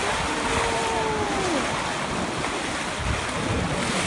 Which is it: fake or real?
real